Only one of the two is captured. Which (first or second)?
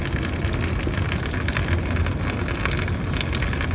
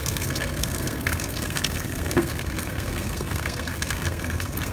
first